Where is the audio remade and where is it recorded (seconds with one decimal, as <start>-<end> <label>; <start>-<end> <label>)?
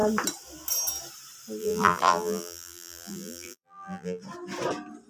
0.0-1.6 recorded; 1.6-4.2 remade; 4.2-5.1 recorded